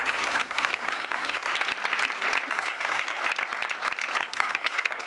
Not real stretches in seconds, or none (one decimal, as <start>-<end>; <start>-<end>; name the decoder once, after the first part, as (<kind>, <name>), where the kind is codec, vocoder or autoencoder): 0.0-1.5 (codec, SNAC); 2.5-3.2; 4.2-5.1